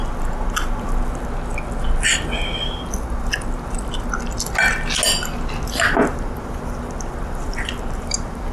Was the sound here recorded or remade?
recorded